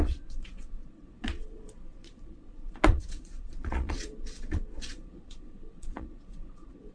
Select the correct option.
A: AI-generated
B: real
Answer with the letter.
A